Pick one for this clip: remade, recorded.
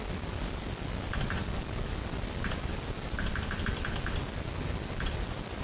recorded